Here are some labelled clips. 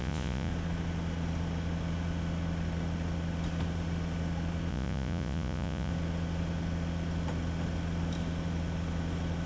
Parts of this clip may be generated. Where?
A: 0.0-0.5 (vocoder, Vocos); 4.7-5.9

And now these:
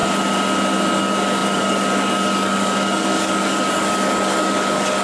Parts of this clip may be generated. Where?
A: 0.9-5.0 (codec, DAC)

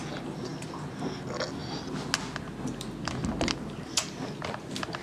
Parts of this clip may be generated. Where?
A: none

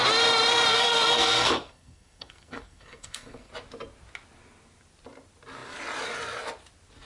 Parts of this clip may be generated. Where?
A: 0.7-3.5 (codec, SNAC)